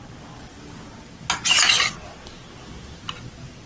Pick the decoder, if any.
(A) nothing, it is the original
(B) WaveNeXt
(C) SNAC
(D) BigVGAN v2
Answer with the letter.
A